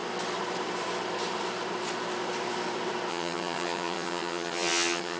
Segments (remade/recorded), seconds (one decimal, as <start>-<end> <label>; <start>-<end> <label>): 0.0-3.1 recorded; 3.1-5.2 remade